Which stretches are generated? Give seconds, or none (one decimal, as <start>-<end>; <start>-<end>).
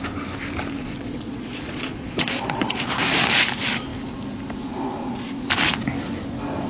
0.8-2.8